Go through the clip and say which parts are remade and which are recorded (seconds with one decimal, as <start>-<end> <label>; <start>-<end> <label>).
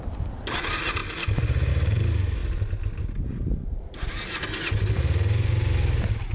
0.0-6.3 recorded